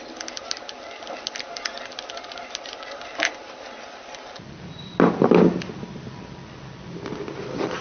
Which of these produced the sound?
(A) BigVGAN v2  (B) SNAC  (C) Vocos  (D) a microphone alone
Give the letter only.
D